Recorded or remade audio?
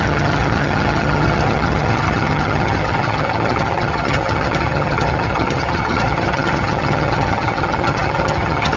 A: remade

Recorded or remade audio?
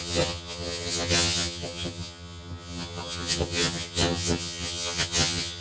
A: remade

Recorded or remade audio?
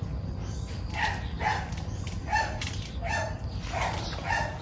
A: recorded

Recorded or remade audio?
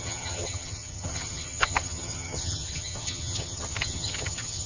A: remade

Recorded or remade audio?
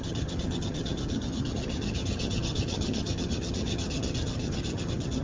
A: remade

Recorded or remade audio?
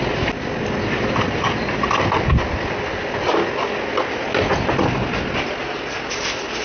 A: recorded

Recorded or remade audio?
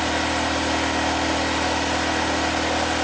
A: recorded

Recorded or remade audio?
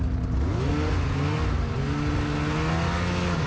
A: recorded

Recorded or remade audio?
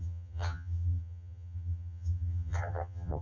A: remade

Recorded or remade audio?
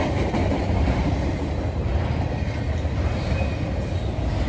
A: recorded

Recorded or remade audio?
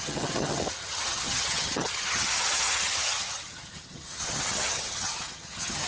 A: remade